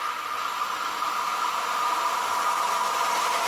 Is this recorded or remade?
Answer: recorded